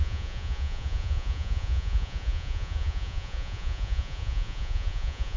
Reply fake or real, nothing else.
fake